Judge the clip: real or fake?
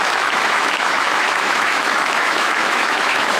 fake